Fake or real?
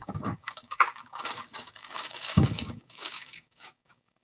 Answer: fake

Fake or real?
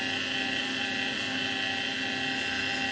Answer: real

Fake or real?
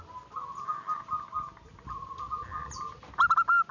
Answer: real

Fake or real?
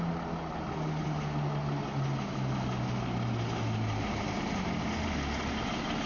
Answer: real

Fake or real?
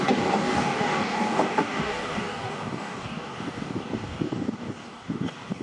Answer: fake